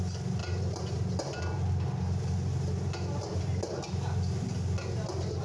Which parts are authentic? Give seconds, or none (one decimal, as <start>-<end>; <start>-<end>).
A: 0.0-5.4